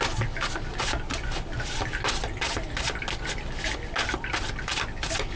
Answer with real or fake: real